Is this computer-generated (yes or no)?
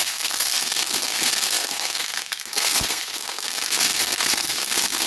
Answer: yes